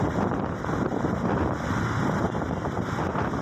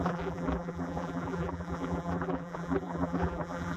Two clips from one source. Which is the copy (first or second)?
second